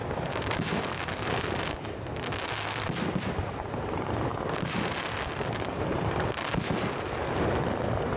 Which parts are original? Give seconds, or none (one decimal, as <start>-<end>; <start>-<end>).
0.0-8.2